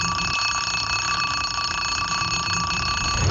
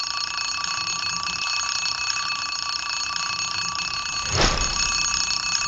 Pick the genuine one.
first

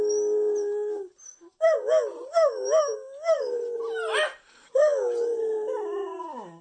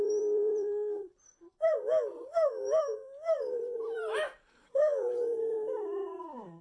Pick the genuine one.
first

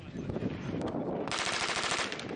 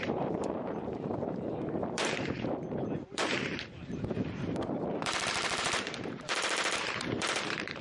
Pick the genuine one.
first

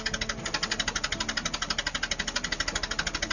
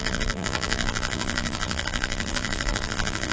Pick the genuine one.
first